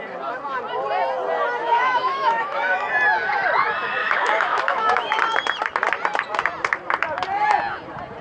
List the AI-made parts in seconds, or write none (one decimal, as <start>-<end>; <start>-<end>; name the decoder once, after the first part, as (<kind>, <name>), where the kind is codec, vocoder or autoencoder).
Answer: 1.6-2.9 (autoencoder, DAC-VAE); 4.0-5.2

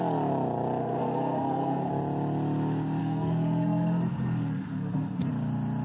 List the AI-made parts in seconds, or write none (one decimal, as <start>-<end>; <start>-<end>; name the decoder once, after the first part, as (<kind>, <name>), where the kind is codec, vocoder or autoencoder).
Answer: 0.8-1.9 (codec, SNAC); 3.0-5.3

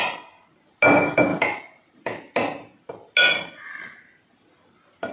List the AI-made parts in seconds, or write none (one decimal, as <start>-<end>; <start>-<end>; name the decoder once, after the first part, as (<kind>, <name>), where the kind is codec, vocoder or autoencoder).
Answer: none

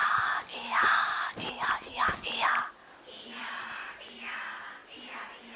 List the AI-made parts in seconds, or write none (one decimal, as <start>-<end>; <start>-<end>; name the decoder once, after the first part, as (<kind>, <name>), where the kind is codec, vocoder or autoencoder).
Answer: 3.4-4.1 (vocoder, BigVGAN v2)

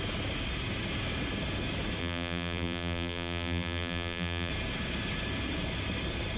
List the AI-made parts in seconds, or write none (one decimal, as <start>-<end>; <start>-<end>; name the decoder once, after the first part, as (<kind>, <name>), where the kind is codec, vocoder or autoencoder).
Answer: 2.0-4.5 (vocoder, BigVGAN v2)

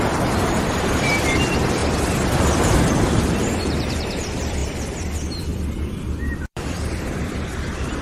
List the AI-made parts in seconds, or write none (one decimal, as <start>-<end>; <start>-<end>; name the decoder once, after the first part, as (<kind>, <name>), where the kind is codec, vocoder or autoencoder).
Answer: 0.0-1.8 (vocoder, BigVGAN v2); 2.8-8.0